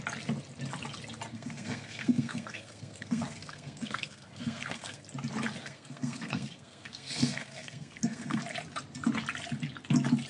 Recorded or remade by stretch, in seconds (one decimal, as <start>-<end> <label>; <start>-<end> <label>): 0.0-1.3 recorded; 1.3-5.0 remade; 5.0-5.6 recorded; 5.6-8.4 remade; 8.4-10.3 recorded